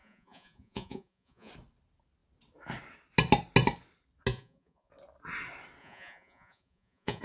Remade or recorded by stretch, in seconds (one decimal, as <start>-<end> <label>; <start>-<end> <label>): 0.0-1.5 remade; 1.5-4.3 recorded; 4.3-4.9 remade; 4.9-5.8 recorded; 5.8-7.2 remade